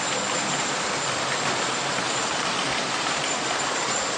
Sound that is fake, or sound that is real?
real